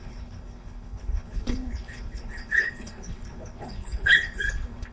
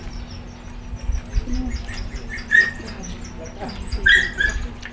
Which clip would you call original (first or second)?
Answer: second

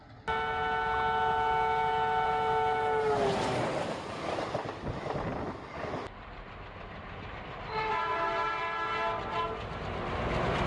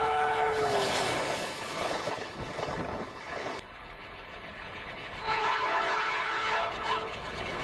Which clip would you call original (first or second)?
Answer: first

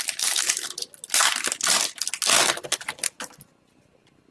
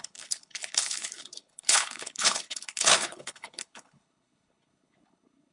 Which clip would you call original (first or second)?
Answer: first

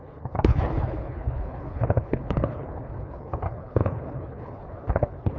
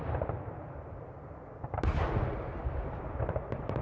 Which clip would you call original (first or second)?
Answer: second